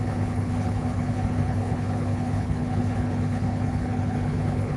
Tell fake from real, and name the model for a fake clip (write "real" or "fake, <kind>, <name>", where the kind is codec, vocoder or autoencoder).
fake, codec, HILCodec